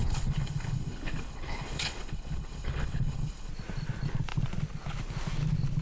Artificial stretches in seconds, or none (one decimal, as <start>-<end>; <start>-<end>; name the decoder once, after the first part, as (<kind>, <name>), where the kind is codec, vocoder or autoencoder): 0.0-3.5 (codec, HILCodec)